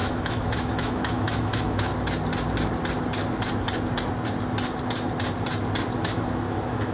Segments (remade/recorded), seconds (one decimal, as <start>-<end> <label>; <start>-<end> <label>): 0.0-1.9 remade; 1.9-6.0 recorded; 6.0-6.9 remade